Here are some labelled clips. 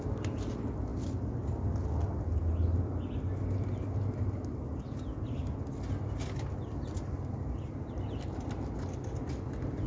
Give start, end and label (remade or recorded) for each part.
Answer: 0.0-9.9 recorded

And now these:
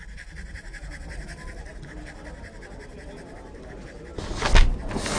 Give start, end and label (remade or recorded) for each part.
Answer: 0.0-5.2 recorded

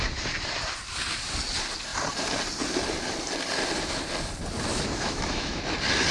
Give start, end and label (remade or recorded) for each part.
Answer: 0.0-4.7 recorded; 4.7-5.6 remade; 5.6-6.1 recorded

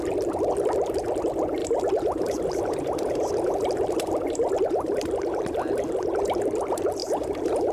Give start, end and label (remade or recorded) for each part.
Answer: 0.0-1.6 recorded; 1.6-6.2 remade; 6.2-7.0 recorded; 7.0-7.7 remade

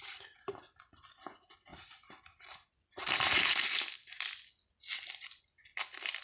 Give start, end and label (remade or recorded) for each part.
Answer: 0.0-6.2 recorded

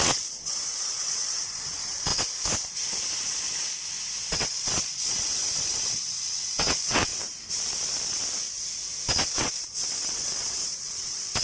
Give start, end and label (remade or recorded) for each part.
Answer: 0.0-2.1 remade; 2.1-4.3 recorded; 4.3-7.1 remade; 7.1-9.3 recorded; 9.3-11.4 remade